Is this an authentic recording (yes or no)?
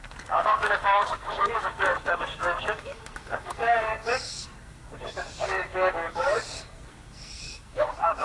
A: no